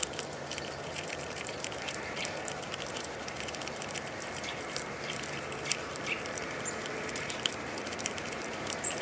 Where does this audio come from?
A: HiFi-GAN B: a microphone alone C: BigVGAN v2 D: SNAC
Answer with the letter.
C